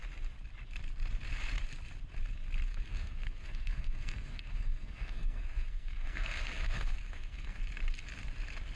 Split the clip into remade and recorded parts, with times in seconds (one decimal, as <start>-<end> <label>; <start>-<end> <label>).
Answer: 0.0-2.7 recorded; 2.7-7.6 remade; 7.6-8.8 recorded